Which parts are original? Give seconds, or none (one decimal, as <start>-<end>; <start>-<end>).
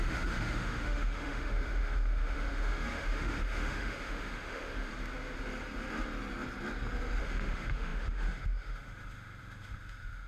4.9-7.2